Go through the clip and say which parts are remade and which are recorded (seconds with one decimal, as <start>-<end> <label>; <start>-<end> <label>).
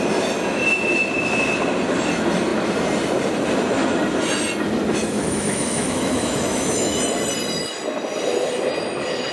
0.0-5.0 recorded; 5.0-7.0 remade; 7.0-9.3 recorded